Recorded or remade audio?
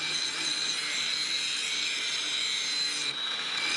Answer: remade